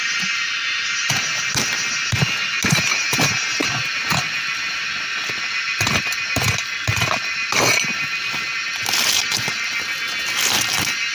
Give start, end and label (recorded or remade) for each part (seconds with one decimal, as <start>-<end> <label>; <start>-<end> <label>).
0.0-11.1 recorded